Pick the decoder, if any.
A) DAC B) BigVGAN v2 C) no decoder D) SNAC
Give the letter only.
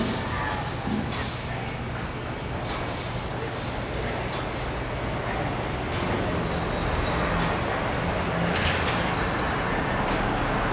C